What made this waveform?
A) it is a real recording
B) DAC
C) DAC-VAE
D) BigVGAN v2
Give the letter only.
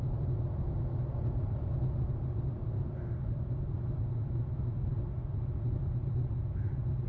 A